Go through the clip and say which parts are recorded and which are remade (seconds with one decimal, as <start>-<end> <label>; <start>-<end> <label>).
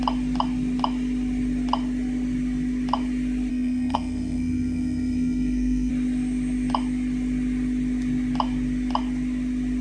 0.0-3.5 recorded; 3.5-5.9 remade; 5.9-9.8 recorded